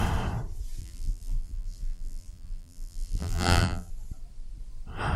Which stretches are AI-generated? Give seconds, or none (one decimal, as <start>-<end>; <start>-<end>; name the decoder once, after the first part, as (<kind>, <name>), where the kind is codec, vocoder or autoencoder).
0.8-3.9 (vocoder, BigVGAN v2)